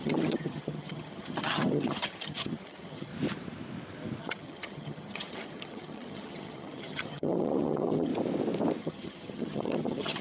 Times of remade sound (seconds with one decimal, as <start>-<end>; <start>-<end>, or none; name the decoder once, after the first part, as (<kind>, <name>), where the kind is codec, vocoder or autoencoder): 0.0-3.1 (vocoder, HiFi-GAN); 4.2-8.1; 8.8-10.2